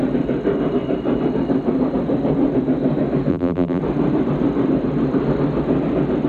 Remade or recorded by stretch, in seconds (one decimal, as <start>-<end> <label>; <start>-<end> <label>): 0.0-3.3 recorded; 3.3-3.8 remade; 3.8-6.3 recorded